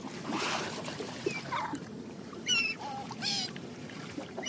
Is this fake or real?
fake